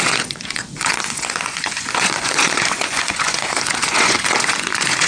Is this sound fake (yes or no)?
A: yes